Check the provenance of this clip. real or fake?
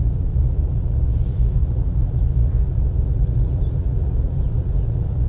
fake